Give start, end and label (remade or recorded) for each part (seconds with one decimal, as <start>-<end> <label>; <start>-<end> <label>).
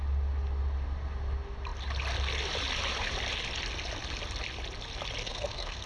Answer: 0.0-5.2 recorded; 5.2-5.9 remade